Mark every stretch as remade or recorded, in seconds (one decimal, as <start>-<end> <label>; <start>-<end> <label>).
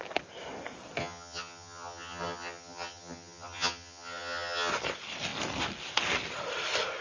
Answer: 0.0-1.0 recorded; 1.0-4.7 remade; 4.7-7.0 recorded